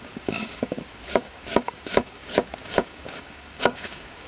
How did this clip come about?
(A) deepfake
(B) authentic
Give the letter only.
A